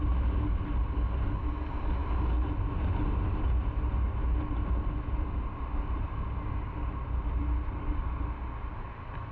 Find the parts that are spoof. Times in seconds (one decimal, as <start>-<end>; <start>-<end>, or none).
none